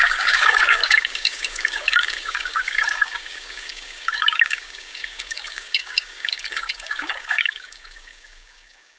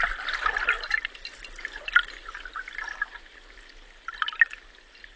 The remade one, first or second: first